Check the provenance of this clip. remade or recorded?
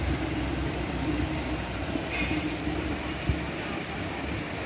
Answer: recorded